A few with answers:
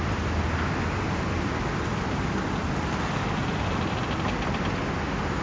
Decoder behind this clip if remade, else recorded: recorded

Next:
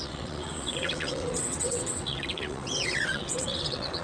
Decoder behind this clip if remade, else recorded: remade, vocoder, WaveNeXt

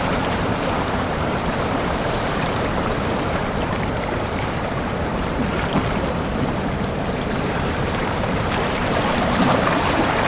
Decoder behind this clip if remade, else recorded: remade, vocoder, BigVGAN v2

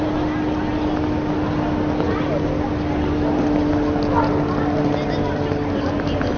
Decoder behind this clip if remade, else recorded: recorded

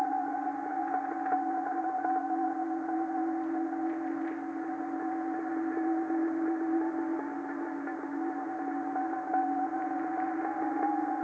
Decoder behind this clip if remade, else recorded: recorded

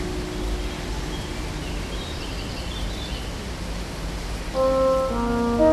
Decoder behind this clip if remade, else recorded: recorded